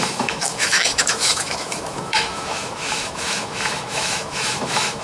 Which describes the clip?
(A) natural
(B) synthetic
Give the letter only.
B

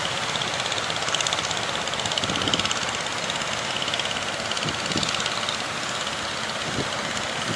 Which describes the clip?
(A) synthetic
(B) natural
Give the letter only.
B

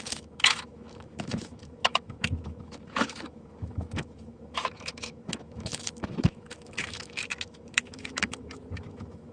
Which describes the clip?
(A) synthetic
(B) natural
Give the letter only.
A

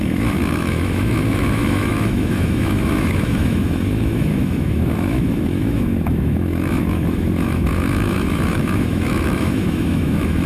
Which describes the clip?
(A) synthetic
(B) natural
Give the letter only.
A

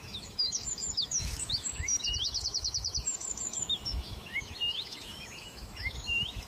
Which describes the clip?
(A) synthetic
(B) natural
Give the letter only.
A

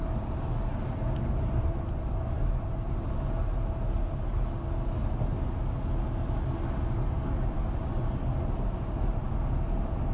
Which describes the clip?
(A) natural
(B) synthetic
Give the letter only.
A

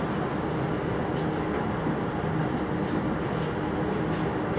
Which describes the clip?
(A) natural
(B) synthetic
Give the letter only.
A